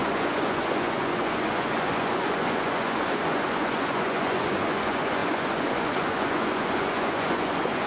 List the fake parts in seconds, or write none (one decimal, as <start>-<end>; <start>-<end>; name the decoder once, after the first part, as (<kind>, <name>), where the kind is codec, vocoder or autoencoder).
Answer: 0.0-7.9 (vocoder, Vocos)